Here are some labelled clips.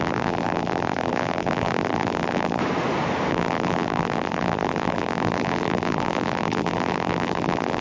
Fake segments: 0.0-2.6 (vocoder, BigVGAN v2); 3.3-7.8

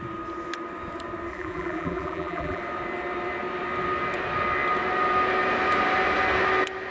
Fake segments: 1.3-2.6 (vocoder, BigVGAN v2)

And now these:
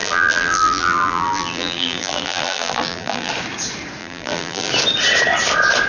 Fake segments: 0.0-3.3 (vocoder, BigVGAN v2); 4.0-4.7

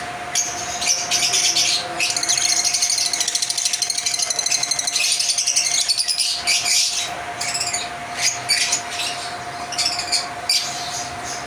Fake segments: none

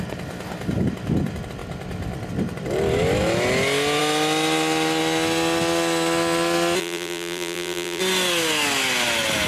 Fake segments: 6.8-8.0 (vocoder, BigVGAN v2)

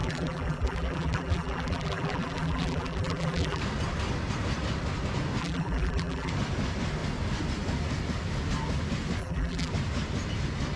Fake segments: 0.0-3.6 (vocoder, BigVGAN v2); 5.4-6.3; 9.2-9.7

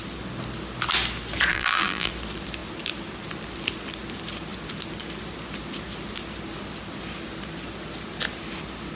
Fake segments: 1.5-2.1 (vocoder, BigVGAN v2)